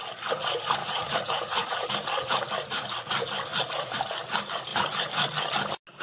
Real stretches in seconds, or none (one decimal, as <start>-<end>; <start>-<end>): 0.0-0.8; 1.9-6.0